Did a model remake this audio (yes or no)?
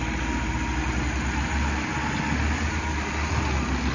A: no